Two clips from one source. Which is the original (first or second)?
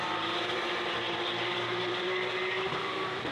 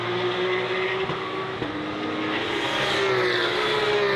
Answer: second